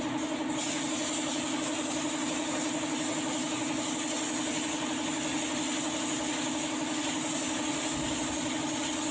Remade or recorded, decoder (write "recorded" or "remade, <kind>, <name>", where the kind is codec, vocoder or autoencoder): recorded